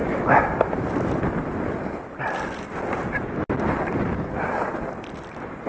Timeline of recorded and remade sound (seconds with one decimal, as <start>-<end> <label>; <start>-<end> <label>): 0.0-2.2 remade; 2.2-5.7 recorded